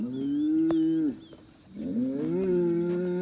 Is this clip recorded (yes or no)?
yes